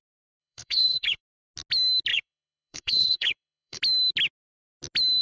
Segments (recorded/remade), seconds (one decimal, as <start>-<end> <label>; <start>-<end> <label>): 0.0-0.4 recorded; 0.4-1.2 remade; 1.2-2.1 recorded; 2.1-3.8 remade; 3.8-5.2 recorded